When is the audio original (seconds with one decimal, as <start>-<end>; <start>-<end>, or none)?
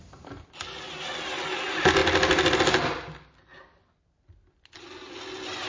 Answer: 0.0-5.7